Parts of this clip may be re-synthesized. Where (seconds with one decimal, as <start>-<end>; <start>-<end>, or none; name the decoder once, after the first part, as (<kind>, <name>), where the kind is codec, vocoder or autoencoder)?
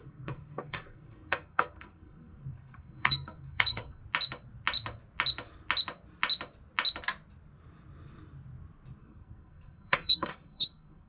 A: 0.0-4.0 (codec, SNAC); 9.0-11.1